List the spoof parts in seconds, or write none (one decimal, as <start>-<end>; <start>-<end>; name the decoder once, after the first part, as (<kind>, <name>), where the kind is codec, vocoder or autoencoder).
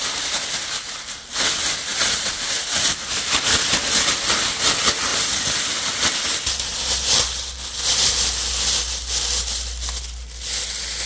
none